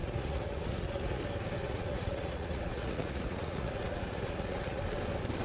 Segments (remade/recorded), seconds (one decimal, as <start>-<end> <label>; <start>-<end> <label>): 0.0-1.2 remade; 1.2-1.6 recorded; 1.6-4.8 remade; 4.8-5.4 recorded